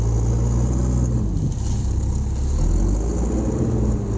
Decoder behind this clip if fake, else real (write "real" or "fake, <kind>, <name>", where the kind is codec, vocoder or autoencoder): real